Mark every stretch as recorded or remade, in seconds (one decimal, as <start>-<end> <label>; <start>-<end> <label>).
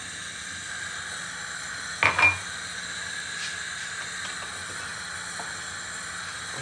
0.0-6.6 recorded